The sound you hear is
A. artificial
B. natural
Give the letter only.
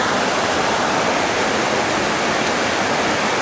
B